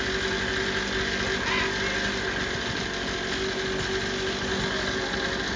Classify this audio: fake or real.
real